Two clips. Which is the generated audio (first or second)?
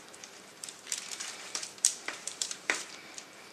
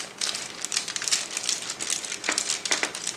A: first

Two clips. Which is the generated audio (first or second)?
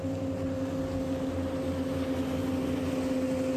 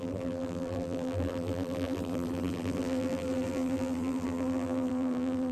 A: second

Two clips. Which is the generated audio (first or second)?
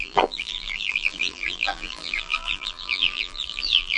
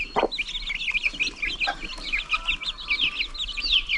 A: first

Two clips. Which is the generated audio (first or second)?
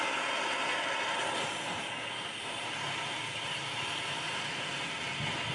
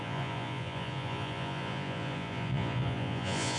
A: second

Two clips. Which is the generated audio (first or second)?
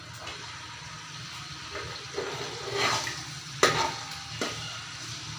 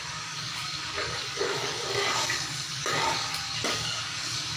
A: second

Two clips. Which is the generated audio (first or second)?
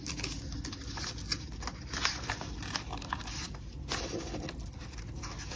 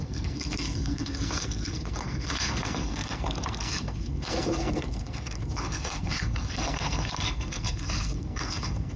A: second